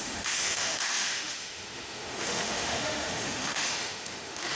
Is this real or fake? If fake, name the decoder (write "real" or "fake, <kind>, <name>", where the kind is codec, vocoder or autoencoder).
fake, autoencoder, DAC-VAE